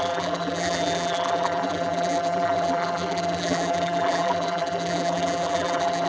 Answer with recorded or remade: remade